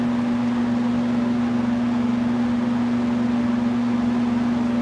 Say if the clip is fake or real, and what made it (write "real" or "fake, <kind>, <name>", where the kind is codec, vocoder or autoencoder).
real